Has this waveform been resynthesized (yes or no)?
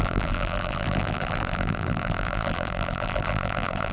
yes